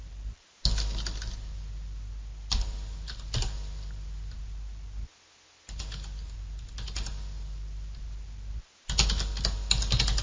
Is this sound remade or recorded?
recorded